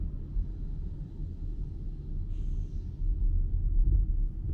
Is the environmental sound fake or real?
real